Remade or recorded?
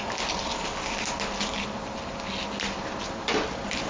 recorded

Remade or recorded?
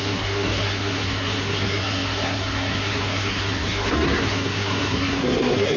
remade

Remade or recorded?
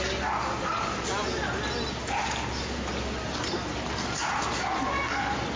recorded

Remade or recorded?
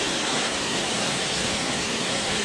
remade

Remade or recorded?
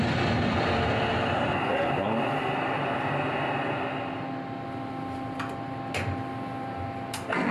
recorded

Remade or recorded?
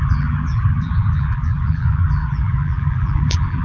remade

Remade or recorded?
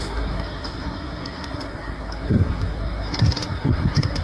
remade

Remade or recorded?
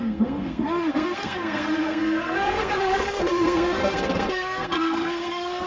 remade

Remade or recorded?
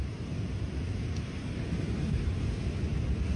recorded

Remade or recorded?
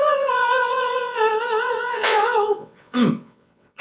remade